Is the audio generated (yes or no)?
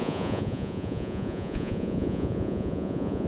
yes